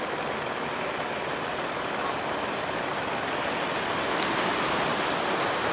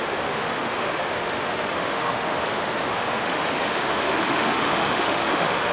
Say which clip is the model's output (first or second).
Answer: second